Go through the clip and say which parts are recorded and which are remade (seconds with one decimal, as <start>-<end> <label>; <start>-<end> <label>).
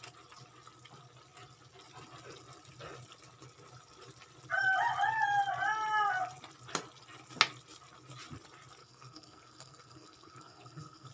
0.0-8.8 recorded; 8.8-11.1 remade